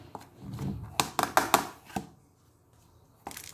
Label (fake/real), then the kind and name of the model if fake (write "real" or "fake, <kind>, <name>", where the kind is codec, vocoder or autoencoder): real